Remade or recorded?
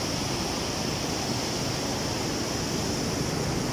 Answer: recorded